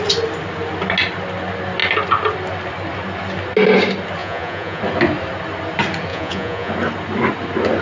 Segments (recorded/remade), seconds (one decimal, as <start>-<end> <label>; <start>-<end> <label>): 0.0-4.2 recorded; 4.2-4.8 remade; 4.8-6.1 recorded; 6.1-6.7 remade; 6.7-7.8 recorded